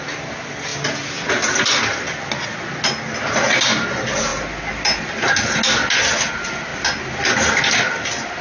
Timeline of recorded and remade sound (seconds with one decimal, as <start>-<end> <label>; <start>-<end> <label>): 0.0-8.4 recorded